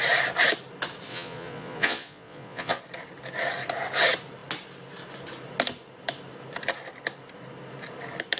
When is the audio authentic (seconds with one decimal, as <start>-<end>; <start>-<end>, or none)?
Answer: 0.0-1.1; 2.8-8.4